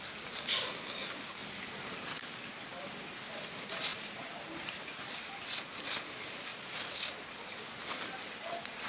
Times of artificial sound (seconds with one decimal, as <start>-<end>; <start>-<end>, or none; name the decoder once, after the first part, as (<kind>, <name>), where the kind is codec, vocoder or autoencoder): 1.4-2.2 (vocoder, BigVGAN v2); 3.9-4.8

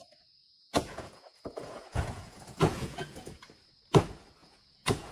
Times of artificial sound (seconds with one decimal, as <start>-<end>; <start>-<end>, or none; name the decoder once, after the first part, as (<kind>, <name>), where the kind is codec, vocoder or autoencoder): 0.4-3.5 (vocoder, Vocos); 4.4-5.1

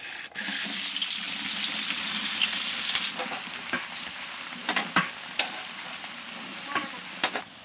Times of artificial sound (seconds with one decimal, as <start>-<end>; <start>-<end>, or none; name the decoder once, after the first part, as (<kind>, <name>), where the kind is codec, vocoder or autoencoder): none

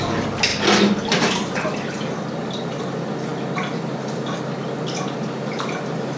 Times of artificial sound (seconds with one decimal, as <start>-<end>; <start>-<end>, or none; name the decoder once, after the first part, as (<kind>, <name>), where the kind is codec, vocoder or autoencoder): none